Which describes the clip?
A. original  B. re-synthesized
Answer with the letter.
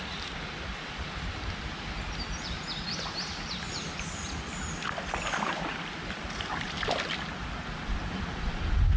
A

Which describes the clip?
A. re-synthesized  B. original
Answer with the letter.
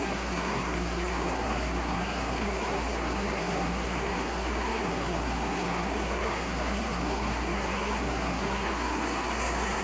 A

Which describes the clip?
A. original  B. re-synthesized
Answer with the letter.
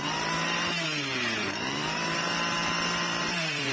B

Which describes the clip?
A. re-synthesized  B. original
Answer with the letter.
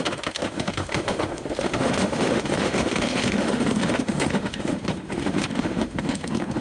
A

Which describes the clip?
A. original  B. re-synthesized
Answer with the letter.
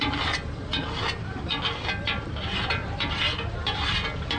A